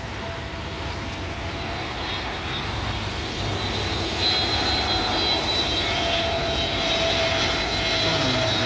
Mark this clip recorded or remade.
recorded